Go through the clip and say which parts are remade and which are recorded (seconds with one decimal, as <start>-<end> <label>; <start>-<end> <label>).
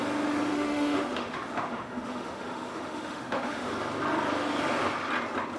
0.0-0.5 recorded; 0.5-3.7 remade; 3.7-5.6 recorded